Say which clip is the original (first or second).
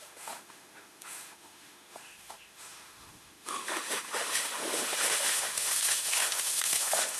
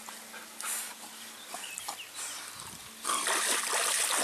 second